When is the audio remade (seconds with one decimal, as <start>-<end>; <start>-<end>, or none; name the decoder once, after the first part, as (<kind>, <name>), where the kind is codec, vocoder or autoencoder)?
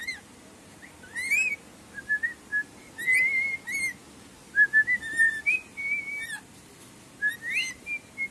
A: none